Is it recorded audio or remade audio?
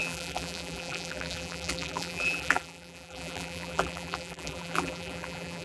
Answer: remade